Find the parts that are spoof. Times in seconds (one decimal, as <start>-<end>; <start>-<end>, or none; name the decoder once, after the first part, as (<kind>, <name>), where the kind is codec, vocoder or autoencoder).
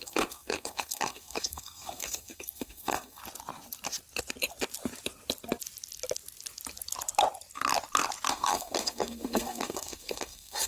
0.0-3.2 (codec, SNAC); 8.3-10.7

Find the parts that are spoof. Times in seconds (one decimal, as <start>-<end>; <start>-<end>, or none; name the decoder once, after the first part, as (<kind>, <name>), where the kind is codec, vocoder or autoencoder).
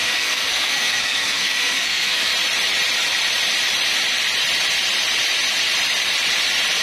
0.0-2.3 (codec, SNAC)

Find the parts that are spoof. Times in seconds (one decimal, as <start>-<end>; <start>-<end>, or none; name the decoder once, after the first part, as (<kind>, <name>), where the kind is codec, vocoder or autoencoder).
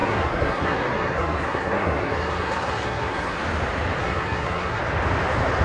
0.0-3.4 (codec, SNAC); 4.0-4.8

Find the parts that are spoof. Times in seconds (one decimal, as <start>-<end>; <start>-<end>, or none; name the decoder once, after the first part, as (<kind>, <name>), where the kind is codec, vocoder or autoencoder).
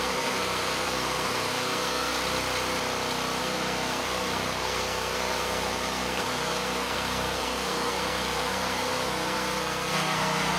0.0-2.1 (codec, SNAC); 3.4-10.6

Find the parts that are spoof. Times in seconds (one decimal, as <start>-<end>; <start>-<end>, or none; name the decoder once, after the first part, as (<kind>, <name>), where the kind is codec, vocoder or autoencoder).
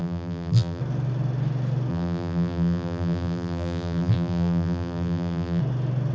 0.0-0.8 (vocoder, BigVGAN v2); 1.9-5.6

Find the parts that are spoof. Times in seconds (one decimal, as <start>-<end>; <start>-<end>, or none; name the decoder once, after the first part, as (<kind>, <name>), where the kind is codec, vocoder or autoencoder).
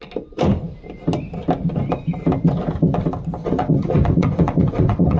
3.4-5.2 (vocoder, Vocos)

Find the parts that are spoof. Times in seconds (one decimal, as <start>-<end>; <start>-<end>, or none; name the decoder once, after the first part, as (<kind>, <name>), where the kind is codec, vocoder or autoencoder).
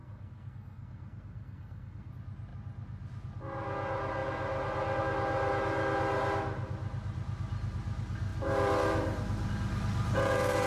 0.0-2.1 (codec, SNAC)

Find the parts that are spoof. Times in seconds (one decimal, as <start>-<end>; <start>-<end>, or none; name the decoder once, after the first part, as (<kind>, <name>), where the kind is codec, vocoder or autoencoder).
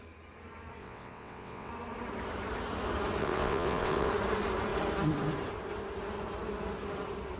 0.8-1.7 (vocoder, WaveNeXt); 3.2-4.1